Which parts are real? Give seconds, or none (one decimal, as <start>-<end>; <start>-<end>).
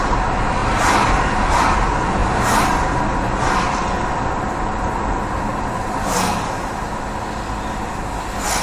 0.0-8.6